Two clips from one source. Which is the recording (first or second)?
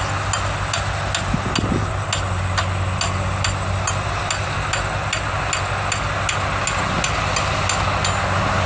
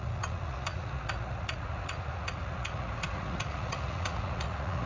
first